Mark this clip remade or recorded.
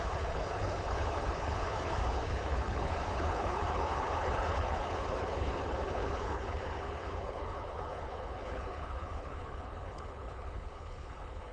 remade